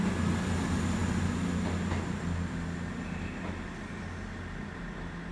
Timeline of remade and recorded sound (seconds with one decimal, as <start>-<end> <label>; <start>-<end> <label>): 0.0-5.3 recorded